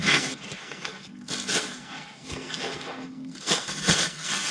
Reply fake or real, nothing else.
fake